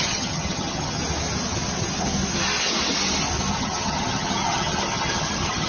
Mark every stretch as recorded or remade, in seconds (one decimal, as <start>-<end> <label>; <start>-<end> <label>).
0.0-1.0 remade; 1.0-3.5 recorded; 3.5-5.7 remade